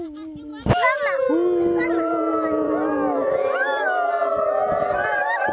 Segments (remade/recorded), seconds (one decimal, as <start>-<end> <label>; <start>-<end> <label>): 0.0-0.5 remade; 0.5-1.8 recorded; 1.8-4.2 remade; 4.2-4.8 recorded; 4.8-5.5 remade